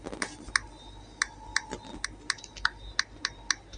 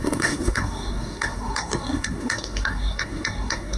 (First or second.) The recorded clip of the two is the first